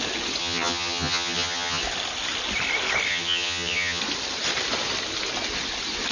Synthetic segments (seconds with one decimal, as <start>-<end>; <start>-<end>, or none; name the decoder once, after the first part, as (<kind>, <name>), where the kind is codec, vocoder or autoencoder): 0.4-1.8 (vocoder, HiFi-GAN); 3.1-4.0